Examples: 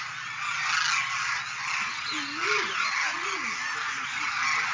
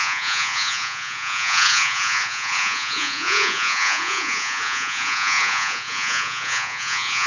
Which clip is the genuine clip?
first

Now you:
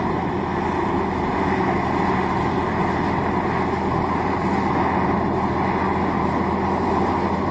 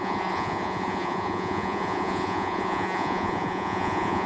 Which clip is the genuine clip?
first